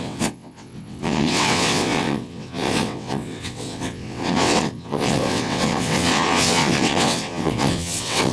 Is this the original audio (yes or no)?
no